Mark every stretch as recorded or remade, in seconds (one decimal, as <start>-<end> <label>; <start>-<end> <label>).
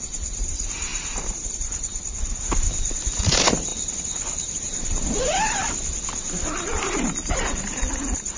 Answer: 0.0-1.9 remade; 1.9-3.2 recorded; 3.2-3.7 remade; 3.7-4.5 recorded; 4.5-5.6 remade; 5.6-6.2 recorded; 6.2-8.4 remade